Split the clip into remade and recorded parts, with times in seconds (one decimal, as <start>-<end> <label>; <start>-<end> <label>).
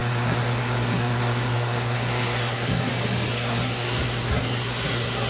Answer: 0.0-2.9 remade; 2.9-3.3 recorded; 3.3-5.3 remade